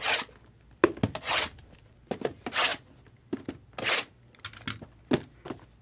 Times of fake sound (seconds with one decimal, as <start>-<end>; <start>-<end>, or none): none